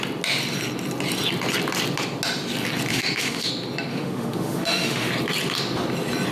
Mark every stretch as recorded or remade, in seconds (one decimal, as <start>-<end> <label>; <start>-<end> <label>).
0.0-2.9 recorded; 2.9-3.5 remade; 3.5-3.9 recorded; 3.9-5.1 remade; 5.1-6.3 recorded